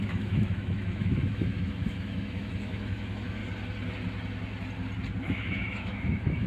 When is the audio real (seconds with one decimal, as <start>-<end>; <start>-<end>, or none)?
3.4-5.2